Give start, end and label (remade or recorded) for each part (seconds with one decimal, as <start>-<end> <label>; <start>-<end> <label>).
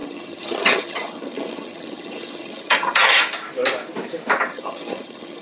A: 0.0-3.2 remade; 3.2-4.5 recorded; 4.5-5.4 remade